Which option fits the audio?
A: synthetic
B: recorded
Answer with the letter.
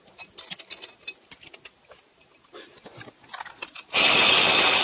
B